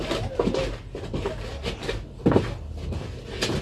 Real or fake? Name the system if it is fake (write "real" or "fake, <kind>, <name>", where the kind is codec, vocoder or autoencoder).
real